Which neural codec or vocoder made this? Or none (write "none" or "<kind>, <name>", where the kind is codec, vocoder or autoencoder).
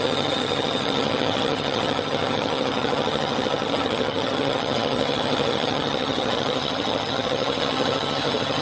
vocoder, HiFi-GAN